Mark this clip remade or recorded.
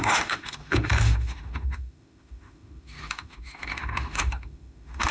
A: remade